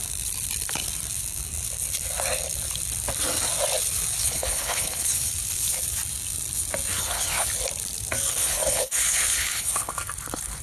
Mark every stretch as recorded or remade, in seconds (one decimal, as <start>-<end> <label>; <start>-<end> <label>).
0.0-4.2 recorded; 4.2-5.3 remade; 5.3-6.9 recorded; 6.9-7.5 remade; 7.5-8.4 recorded; 8.4-9.9 remade; 9.9-10.6 recorded